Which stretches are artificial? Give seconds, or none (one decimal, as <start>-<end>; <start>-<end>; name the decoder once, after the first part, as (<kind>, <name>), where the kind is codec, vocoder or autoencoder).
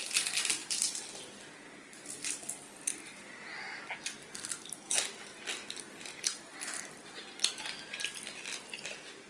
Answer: none